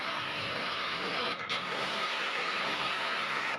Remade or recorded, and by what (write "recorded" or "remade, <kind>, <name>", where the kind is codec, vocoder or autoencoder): remade, codec, SNAC